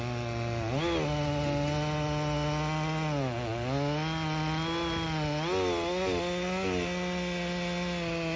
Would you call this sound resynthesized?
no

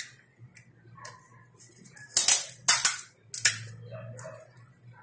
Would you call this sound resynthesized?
no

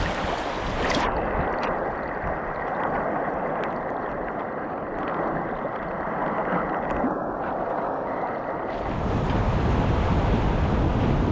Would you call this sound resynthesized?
no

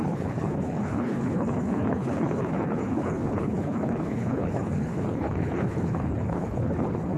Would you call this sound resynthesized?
yes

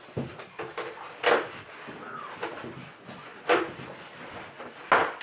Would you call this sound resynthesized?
no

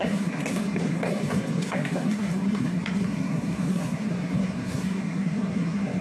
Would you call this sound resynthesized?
yes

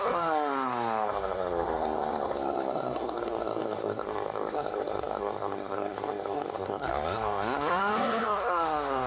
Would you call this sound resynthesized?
yes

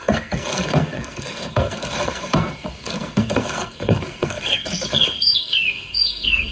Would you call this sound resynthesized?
yes